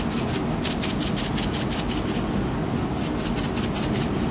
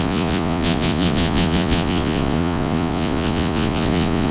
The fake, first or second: second